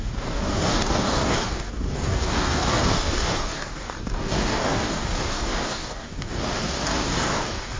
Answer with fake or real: fake